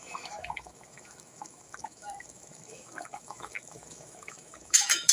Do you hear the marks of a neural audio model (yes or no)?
yes